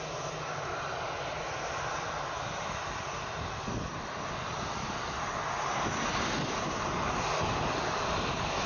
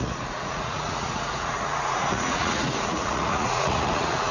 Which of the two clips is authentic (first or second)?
first